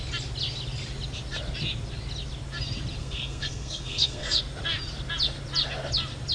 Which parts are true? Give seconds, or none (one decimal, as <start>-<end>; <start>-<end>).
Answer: 0.0-3.0; 4.4-6.3